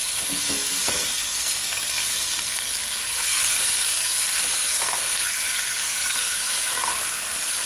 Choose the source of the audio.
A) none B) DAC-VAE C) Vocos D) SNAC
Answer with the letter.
D